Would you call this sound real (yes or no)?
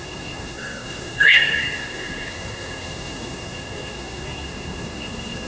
no